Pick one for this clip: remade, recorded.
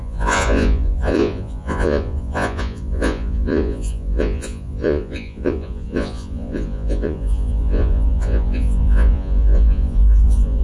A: remade